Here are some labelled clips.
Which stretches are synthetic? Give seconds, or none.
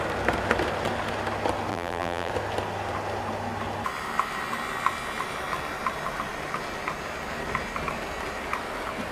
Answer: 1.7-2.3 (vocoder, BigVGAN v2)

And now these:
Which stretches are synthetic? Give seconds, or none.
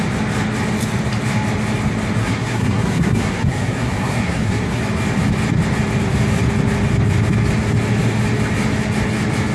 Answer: 2.2-4.8 (codec, SNAC)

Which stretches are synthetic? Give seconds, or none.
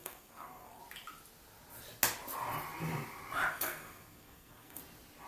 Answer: 0.0-0.8 (codec, SNAC); 3.5-4.8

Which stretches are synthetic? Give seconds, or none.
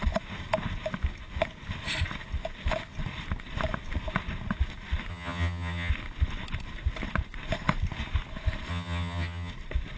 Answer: 5.1-5.9 (vocoder, HiFi-GAN); 8.7-9.5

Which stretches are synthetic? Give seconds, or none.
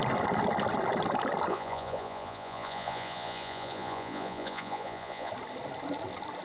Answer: 1.5-5.3 (vocoder, Vocos)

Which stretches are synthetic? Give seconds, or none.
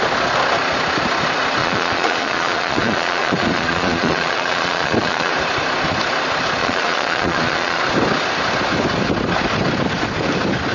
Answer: 1.6-5.3 (vocoder, Vocos); 6.6-7.8